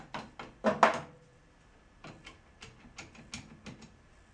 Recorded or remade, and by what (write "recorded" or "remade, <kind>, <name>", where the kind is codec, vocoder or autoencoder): recorded